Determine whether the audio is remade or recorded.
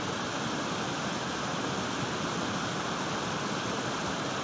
recorded